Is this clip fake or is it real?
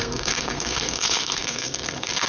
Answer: fake